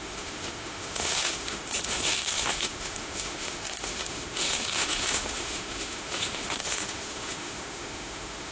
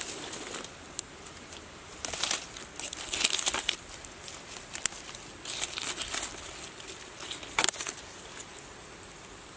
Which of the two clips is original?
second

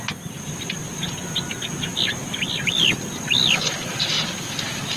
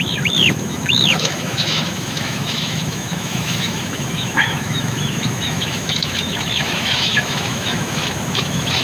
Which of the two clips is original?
first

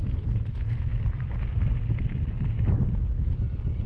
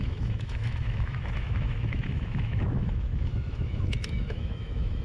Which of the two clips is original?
first